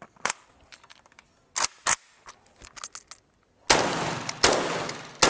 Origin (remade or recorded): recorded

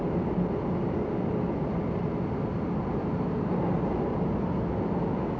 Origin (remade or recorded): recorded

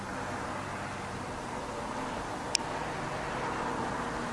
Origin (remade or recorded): recorded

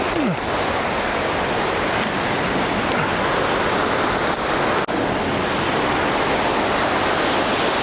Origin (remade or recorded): recorded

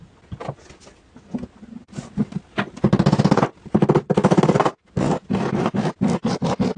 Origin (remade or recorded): recorded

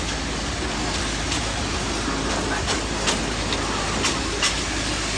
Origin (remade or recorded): recorded